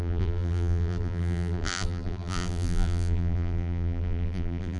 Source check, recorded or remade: remade